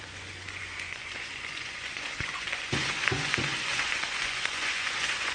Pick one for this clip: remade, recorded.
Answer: remade